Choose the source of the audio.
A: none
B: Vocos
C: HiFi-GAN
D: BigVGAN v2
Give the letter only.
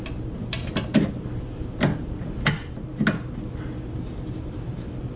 A